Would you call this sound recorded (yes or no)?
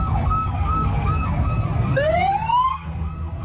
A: no